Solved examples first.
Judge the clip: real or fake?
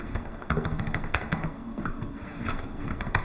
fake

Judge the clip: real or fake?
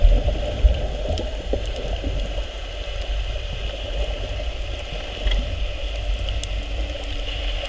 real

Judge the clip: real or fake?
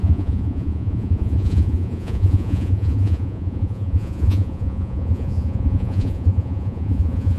fake